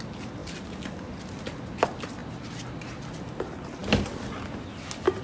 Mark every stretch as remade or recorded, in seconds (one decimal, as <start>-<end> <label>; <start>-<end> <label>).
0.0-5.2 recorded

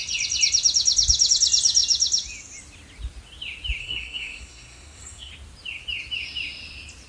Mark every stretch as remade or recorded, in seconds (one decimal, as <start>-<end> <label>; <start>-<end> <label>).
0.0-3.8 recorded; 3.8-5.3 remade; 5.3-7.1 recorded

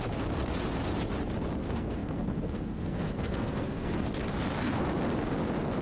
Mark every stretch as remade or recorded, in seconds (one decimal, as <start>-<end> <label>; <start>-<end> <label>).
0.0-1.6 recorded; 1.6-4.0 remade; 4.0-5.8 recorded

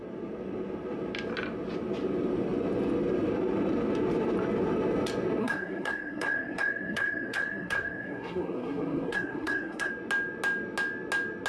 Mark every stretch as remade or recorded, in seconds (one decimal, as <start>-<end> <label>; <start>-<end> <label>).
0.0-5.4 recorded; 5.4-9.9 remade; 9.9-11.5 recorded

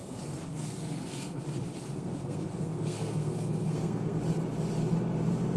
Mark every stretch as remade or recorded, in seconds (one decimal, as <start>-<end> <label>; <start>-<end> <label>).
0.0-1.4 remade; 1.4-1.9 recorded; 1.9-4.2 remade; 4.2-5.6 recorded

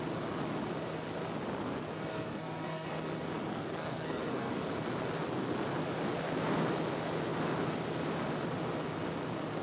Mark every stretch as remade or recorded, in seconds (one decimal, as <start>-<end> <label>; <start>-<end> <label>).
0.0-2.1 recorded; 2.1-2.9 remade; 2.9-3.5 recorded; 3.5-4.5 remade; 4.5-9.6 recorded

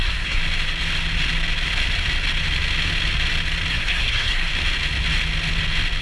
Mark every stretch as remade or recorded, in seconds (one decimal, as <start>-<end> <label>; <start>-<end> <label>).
0.0-0.4 remade; 0.4-3.7 recorded; 3.7-4.5 remade; 4.5-6.0 recorded

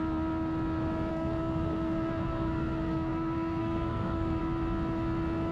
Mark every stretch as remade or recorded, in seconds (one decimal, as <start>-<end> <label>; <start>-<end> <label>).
0.0-1.1 recorded; 1.1-4.4 remade; 4.4-5.5 recorded